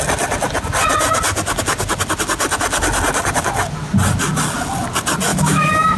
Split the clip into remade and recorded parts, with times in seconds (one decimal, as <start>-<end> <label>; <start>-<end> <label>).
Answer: 0.0-5.3 recorded; 5.3-6.0 remade